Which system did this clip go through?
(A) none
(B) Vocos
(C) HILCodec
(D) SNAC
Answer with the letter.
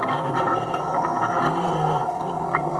D